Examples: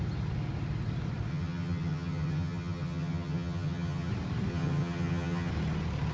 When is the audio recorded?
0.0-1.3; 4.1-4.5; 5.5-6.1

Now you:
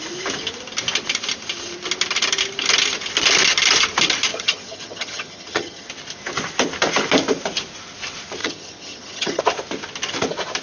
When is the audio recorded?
0.0-4.3; 5.9-8.4; 9.4-10.6

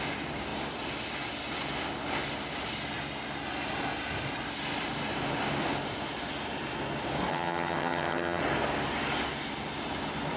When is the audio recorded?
0.0-7.3; 8.4-10.4

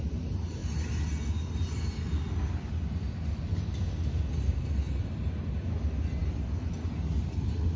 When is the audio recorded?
0.0-7.8

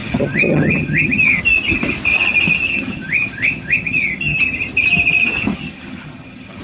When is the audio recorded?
1.4-2.7; 4.4-5.5